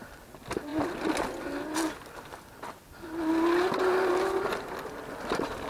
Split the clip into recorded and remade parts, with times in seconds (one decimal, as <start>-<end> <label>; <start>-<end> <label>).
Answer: 0.0-5.7 recorded